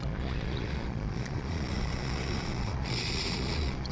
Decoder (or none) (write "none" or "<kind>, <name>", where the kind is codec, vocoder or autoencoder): vocoder, Vocos